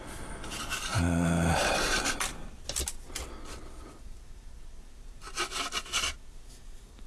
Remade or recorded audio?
recorded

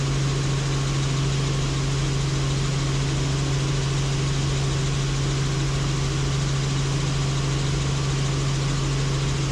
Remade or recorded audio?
recorded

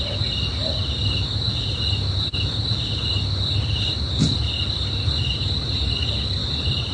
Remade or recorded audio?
recorded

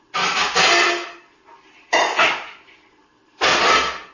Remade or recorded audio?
recorded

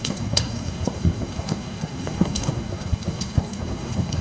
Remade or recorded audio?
remade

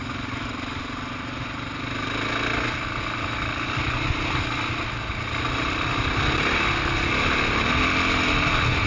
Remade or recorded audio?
recorded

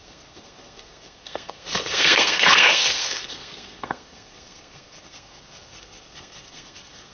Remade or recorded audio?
remade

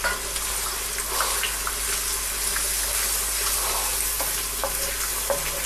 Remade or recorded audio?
recorded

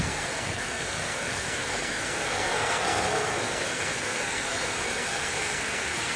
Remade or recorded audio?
remade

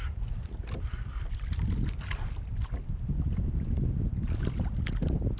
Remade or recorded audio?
recorded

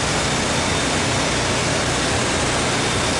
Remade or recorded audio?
recorded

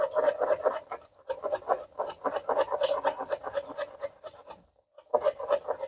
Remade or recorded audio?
recorded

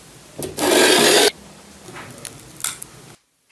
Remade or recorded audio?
recorded